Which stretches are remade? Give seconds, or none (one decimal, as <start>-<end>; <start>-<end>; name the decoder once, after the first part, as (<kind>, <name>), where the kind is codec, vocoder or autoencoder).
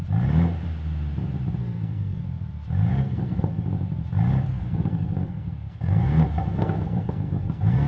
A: 1.6-2.2 (codec, SNAC); 2.9-3.7; 4.5-7.9